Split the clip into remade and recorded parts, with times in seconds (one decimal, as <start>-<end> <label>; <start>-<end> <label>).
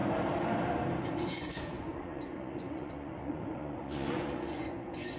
0.0-1.2 recorded; 1.2-5.2 remade